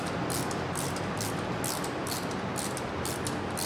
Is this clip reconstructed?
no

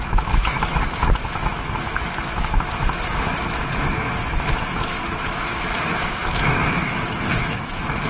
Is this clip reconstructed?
yes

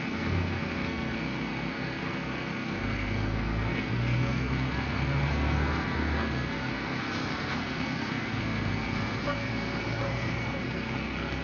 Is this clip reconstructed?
yes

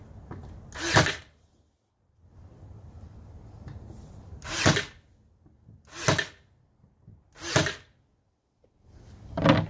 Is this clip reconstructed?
no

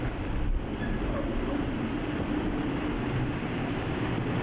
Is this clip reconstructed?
no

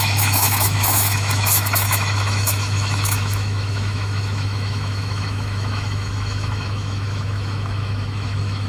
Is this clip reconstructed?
yes